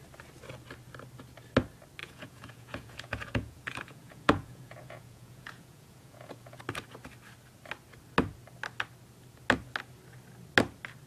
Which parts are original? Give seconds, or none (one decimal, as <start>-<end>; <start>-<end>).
0.0-2.0; 6.6-11.1